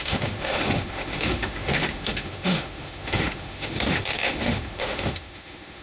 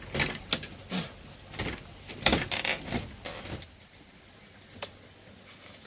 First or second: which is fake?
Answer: first